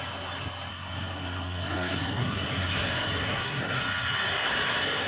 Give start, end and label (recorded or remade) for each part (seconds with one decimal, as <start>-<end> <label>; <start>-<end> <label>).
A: 0.0-0.7 recorded; 0.7-3.8 remade; 3.8-4.3 recorded; 4.3-5.1 remade